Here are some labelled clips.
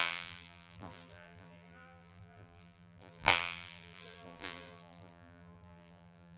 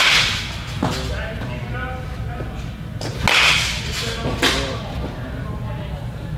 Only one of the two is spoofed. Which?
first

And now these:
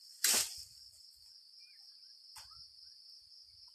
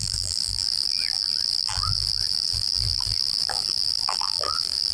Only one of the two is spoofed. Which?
second